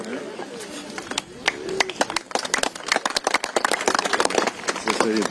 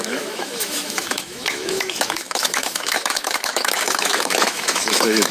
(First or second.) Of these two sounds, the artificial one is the second